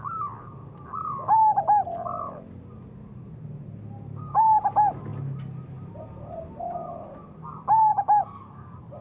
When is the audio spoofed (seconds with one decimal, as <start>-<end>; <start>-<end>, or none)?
none